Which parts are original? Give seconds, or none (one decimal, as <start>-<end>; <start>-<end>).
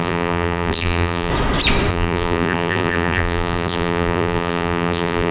1.3-1.9